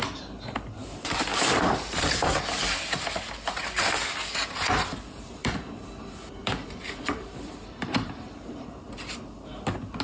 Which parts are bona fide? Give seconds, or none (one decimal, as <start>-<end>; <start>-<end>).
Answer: 0.0-0.8; 2.3-5.4; 5.9-6.4; 9.1-10.0